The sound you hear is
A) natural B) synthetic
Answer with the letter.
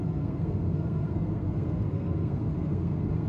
B